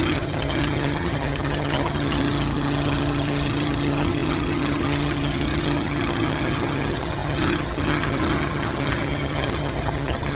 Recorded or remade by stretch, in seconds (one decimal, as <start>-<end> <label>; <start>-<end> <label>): 0.0-10.3 remade